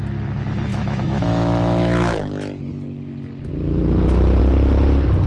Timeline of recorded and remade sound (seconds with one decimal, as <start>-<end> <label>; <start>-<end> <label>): 0.0-0.7 recorded; 0.7-2.6 remade; 2.6-5.3 recorded